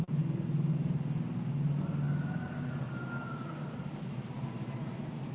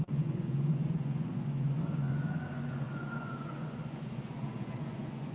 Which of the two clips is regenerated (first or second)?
second